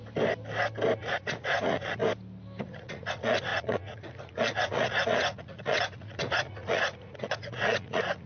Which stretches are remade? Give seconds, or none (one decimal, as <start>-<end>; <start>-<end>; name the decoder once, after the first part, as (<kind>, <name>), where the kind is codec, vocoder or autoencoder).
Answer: 1.0-2.0 (vocoder, Vocos); 2.6-8.3